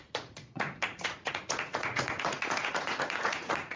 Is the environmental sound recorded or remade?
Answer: remade